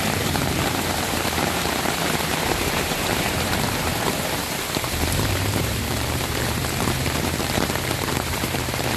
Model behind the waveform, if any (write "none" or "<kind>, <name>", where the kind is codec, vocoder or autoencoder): vocoder, BigVGAN v2